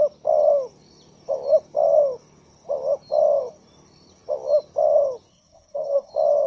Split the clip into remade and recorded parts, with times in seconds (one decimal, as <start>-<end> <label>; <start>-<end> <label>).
0.0-5.3 recorded; 5.3-6.1 remade; 6.1-6.5 recorded